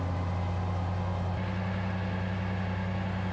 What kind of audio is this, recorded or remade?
recorded